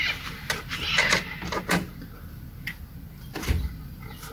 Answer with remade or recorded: recorded